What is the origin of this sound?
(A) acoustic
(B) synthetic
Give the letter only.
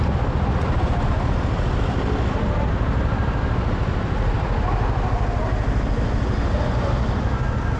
A